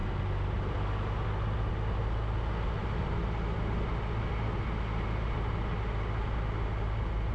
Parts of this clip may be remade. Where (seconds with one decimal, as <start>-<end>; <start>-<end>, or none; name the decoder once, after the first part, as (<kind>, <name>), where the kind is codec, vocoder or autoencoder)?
none